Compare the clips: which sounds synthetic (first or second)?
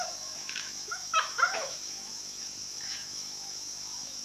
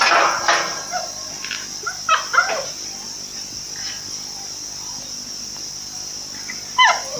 first